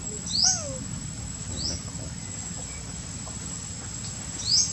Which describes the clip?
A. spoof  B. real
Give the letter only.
B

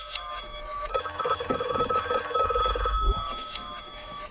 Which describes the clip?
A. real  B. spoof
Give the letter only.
B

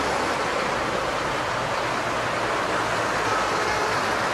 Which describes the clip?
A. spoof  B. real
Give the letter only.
B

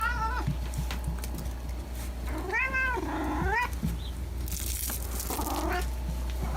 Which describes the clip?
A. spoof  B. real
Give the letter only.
B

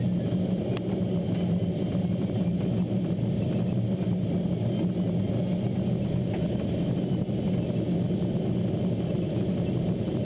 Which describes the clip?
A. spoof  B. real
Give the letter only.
B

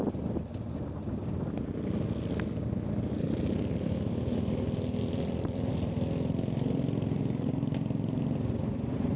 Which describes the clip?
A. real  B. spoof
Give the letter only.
A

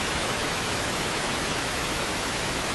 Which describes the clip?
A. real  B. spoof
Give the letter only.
B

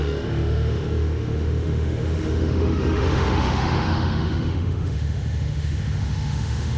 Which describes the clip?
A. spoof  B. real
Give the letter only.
A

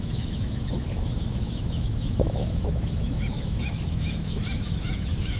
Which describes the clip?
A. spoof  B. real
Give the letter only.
A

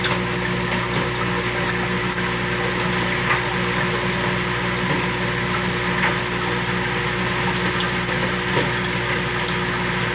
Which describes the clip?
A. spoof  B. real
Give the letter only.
B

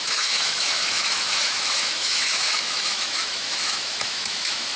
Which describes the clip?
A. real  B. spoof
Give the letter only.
B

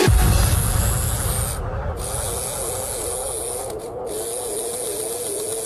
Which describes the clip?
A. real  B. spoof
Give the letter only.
A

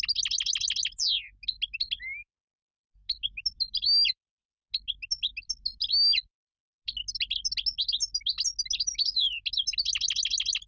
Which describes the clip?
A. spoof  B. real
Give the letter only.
B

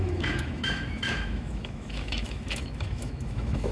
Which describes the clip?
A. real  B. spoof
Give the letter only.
B